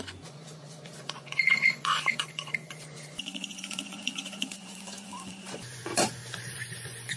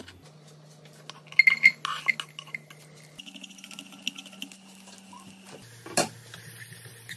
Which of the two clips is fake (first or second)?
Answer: first